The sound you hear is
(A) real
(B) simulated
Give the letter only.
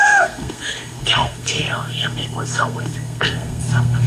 B